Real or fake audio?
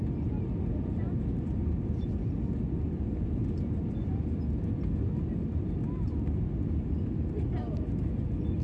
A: real